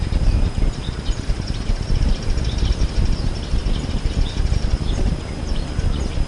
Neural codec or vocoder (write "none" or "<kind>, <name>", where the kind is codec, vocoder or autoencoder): vocoder, BigVGAN v2